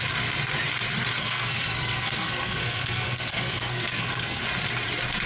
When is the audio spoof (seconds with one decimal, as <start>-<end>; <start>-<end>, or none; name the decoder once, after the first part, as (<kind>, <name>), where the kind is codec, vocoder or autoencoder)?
1.2-4.4 (codec, SNAC)